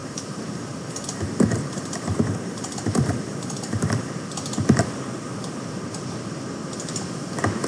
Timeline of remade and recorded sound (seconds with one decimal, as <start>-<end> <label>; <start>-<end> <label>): 0.0-4.1 remade; 4.1-7.7 recorded